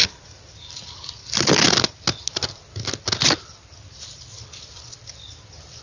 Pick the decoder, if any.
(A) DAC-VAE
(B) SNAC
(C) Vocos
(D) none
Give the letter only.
D